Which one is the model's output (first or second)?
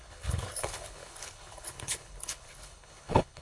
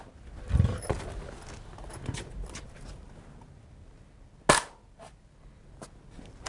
first